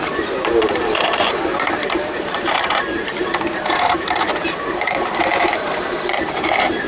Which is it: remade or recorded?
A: remade